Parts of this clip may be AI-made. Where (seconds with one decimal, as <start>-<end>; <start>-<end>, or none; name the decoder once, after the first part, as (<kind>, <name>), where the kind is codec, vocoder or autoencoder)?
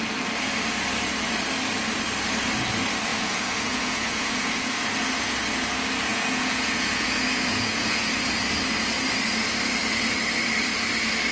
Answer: 3.1-4.7 (vocoder, Vocos); 6.1-8.1